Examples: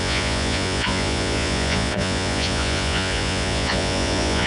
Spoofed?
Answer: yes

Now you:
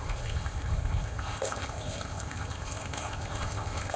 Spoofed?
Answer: yes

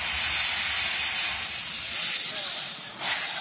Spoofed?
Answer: no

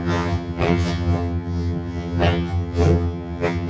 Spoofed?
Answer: yes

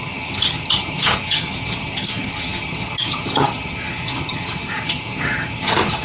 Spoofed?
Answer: yes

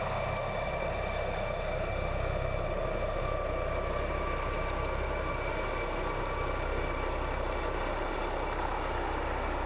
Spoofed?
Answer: no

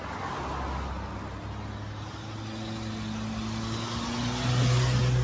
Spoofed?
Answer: no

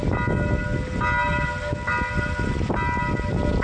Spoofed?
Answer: no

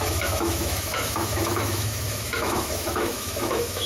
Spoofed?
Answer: yes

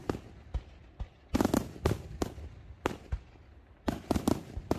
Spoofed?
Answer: no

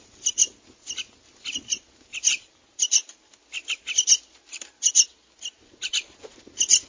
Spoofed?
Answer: no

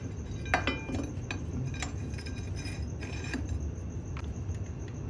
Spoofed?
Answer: no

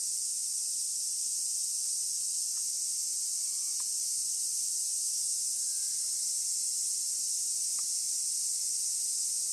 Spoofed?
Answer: no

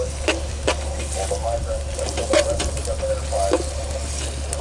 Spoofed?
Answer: no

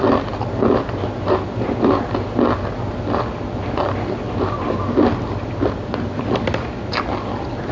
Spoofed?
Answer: no